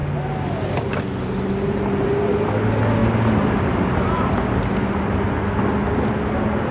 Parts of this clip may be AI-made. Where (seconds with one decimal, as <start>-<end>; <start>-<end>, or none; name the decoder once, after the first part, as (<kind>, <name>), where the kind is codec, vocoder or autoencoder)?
none